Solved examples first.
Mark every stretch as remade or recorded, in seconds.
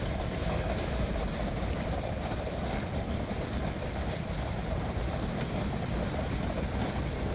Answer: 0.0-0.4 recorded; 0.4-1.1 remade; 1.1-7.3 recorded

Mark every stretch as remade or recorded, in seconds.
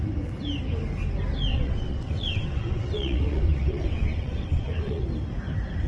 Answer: 0.0-1.5 recorded; 1.5-5.0 remade; 5.0-5.9 recorded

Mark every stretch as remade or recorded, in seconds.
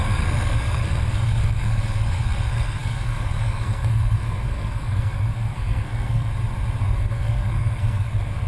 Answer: 0.0-6.3 remade; 6.3-6.8 recorded; 6.8-8.5 remade